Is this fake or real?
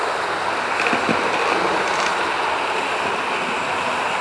real